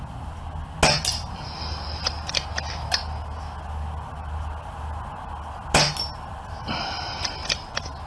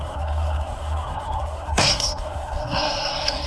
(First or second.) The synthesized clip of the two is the second